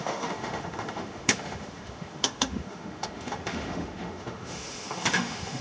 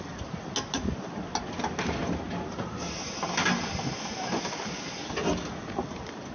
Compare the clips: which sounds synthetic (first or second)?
first